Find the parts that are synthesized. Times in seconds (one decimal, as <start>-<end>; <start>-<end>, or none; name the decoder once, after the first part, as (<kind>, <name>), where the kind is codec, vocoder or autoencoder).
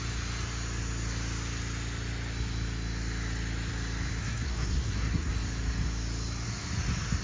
4.2-5.3 (codec, SNAC)